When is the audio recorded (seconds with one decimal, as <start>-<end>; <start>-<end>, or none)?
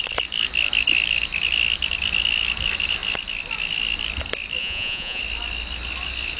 0.0-4.6; 5.2-6.4